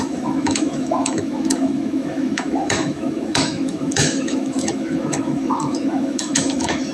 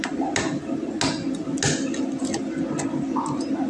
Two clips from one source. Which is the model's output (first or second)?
first